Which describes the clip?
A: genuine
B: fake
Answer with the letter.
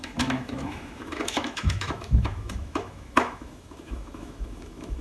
B